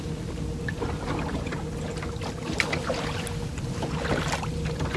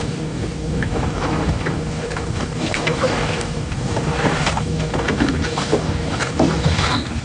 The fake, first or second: second